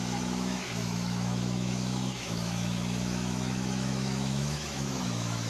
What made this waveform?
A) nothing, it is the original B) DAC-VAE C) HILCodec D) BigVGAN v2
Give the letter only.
B